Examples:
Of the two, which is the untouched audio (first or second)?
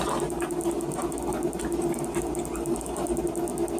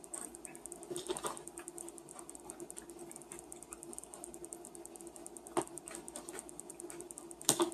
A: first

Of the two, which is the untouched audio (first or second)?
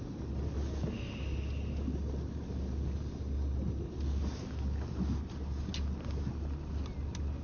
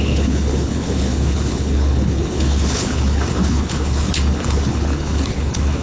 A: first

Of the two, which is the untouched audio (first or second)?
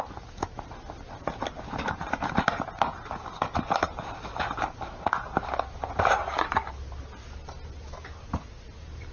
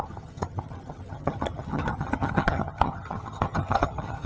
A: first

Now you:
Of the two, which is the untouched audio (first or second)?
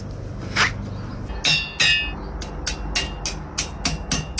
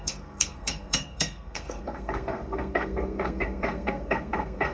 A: first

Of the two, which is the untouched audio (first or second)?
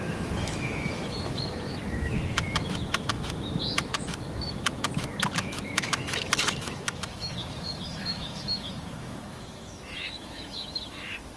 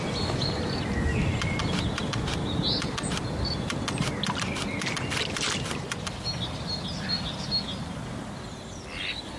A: second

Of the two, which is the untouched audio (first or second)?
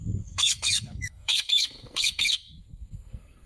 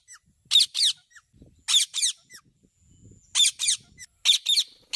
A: second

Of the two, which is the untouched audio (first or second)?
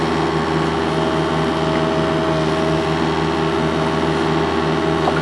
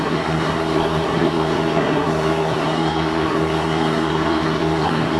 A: first